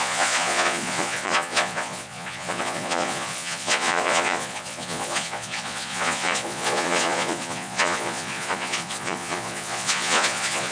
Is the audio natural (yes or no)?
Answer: no